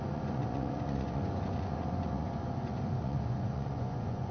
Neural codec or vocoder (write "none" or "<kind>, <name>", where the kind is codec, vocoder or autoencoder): vocoder, Vocos